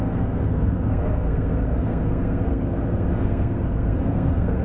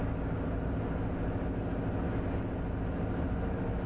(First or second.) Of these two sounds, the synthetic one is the first